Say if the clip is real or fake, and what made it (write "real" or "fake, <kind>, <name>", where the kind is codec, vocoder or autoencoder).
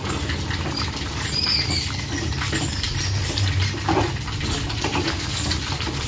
real